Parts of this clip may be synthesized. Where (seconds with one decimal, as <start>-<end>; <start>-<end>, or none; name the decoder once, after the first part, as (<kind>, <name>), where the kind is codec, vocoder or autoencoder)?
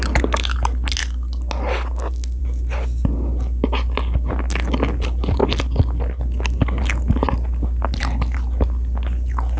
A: none